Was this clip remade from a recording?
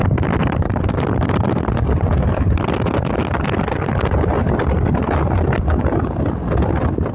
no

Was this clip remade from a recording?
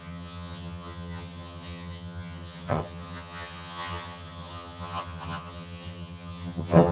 yes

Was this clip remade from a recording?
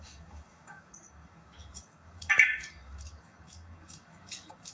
yes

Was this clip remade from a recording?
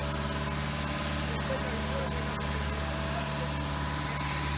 no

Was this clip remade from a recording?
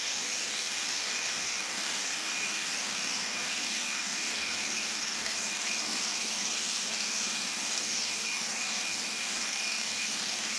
yes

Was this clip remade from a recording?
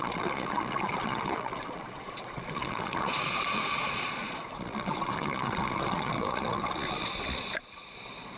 yes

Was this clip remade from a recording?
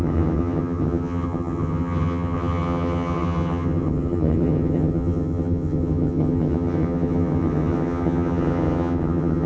yes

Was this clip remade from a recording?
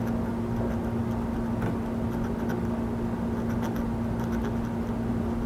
no